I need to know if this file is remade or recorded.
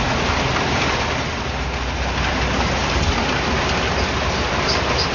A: recorded